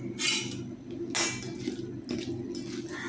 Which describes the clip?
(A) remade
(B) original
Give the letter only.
B